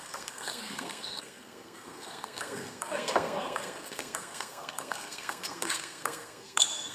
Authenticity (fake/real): fake